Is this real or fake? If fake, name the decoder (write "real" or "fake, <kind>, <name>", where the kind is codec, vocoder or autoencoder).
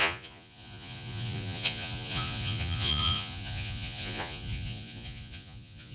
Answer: fake, vocoder, Vocos